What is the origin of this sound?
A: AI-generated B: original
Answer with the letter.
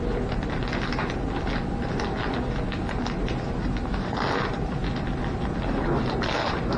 B